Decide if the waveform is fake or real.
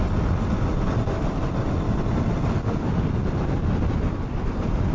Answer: real